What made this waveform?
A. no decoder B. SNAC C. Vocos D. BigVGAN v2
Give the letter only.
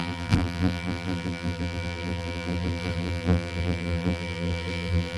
D